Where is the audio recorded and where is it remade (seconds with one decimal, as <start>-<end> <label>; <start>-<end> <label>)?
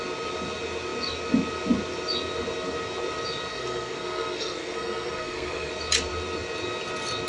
0.0-3.5 recorded; 3.5-5.7 remade; 5.7-7.3 recorded